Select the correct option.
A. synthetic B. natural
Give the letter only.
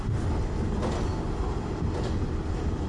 B